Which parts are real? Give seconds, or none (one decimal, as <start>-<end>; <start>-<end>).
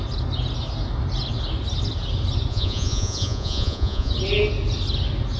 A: 0.0-2.5; 4.1-5.4